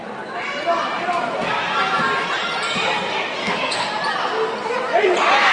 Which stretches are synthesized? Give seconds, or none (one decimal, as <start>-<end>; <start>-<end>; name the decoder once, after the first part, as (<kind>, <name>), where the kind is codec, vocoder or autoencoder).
3.4-3.9 (codec, SNAC)